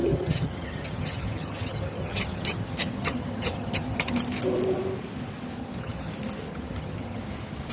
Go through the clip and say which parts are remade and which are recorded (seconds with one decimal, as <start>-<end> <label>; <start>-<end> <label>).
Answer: 0.0-4.2 remade; 4.2-5.6 recorded; 5.6-6.1 remade; 6.1-6.5 recorded; 6.5-7.2 remade; 7.2-7.7 recorded